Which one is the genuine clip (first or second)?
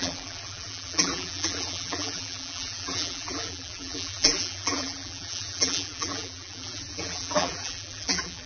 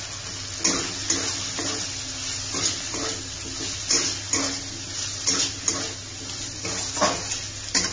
second